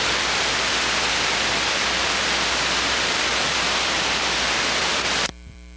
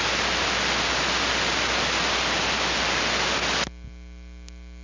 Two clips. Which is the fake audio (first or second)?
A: first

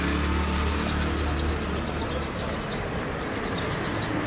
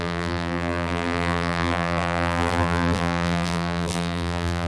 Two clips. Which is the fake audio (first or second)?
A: second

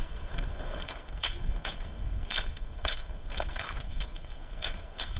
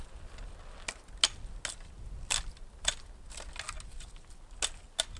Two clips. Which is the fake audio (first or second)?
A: first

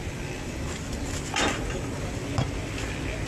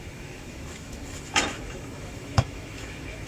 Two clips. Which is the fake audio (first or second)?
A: second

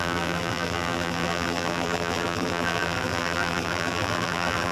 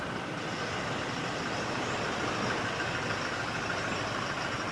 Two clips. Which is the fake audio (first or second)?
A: first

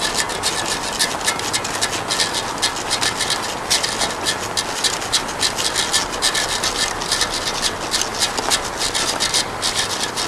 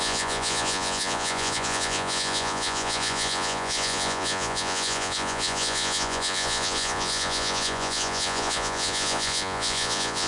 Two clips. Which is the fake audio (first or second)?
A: second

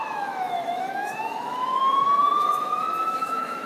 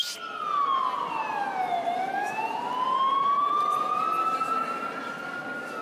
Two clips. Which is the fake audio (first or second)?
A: first